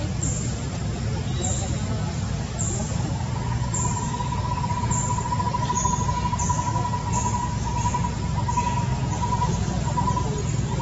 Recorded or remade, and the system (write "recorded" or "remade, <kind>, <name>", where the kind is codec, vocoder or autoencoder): recorded